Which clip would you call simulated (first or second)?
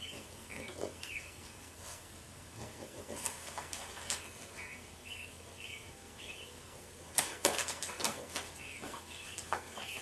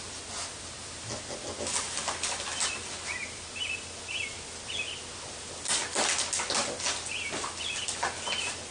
first